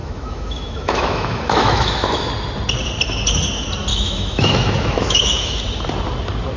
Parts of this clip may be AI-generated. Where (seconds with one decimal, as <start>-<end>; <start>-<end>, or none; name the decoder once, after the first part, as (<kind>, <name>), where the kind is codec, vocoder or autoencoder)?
0.0-2.3 (autoencoder, DAC-VAE); 3.9-5.6